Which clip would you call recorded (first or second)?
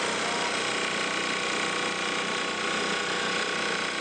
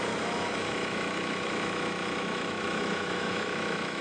first